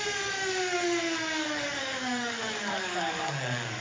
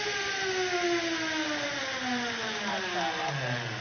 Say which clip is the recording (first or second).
second